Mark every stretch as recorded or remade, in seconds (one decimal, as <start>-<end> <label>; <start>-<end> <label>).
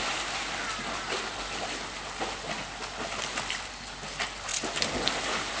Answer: 0.0-5.6 recorded